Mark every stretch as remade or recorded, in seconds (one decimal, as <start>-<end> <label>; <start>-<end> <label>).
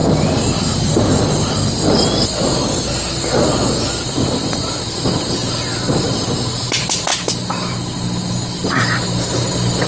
0.0-9.9 recorded